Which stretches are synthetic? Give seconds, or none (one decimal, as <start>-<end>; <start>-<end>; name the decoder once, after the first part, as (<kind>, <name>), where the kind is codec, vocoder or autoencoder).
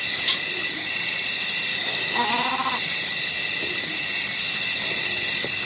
1.7-2.3 (codec, DAC)